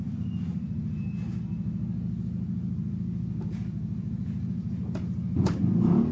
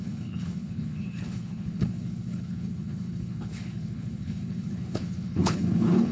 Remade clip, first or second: second